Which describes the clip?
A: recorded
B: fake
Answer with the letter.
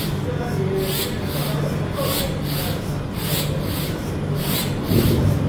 A